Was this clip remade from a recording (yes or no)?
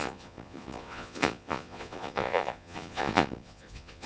yes